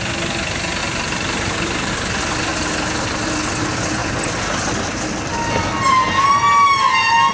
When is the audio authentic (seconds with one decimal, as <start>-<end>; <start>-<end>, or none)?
0.0-0.8; 1.9-7.3